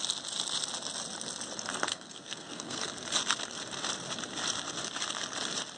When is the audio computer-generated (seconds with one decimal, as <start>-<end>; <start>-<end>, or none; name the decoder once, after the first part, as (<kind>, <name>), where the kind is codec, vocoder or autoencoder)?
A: 1.9-2.9 (codec, SNAC)